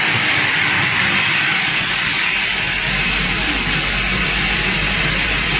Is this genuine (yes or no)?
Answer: no